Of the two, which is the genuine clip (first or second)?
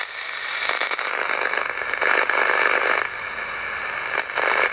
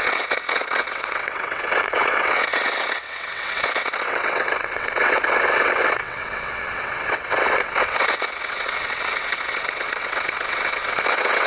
first